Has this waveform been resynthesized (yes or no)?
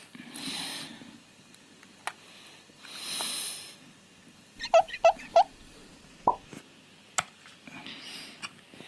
no